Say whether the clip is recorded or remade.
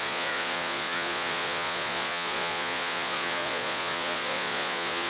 remade